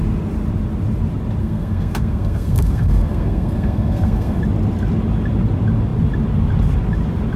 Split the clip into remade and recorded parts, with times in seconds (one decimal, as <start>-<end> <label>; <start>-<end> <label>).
0.0-1.4 recorded; 1.4-4.4 remade; 4.4-7.4 recorded

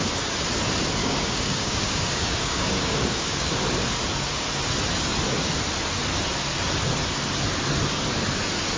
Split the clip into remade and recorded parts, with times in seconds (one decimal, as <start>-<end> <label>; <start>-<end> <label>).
0.0-1.0 recorded; 1.0-3.5 remade; 3.5-8.8 recorded

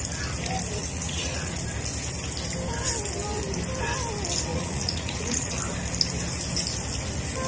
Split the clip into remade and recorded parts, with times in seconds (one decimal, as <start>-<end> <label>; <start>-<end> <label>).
0.0-0.8 recorded; 0.8-1.6 remade; 1.6-4.5 recorded; 4.5-5.6 remade; 5.6-7.5 recorded

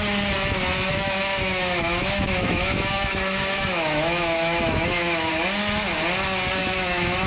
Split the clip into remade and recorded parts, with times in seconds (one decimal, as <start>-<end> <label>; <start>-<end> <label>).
0.0-0.9 recorded; 0.9-5.3 remade; 5.3-6.6 recorded; 6.6-7.3 remade

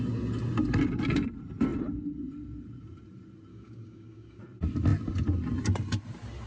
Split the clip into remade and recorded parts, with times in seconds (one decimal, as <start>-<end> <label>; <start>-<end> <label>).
0.0-3.5 recorded; 3.5-4.4 remade; 4.4-6.5 recorded